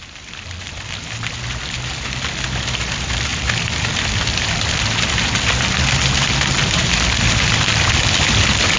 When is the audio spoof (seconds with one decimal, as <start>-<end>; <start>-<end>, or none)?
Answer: none